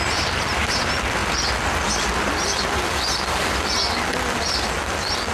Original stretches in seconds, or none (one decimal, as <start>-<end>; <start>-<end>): 0.0-5.3

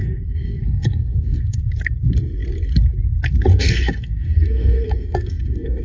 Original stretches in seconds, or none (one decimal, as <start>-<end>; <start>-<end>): 1.6-3.5

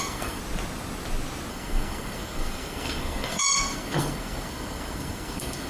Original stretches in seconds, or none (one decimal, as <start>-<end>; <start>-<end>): 0.4-1.5